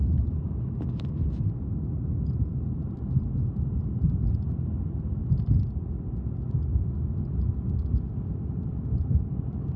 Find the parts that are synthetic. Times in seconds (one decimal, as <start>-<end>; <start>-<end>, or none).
0.0-5.2; 9.3-9.8